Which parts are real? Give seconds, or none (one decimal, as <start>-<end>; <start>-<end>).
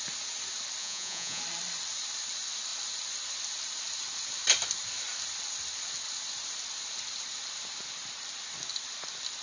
0.0-0.8; 1.4-9.4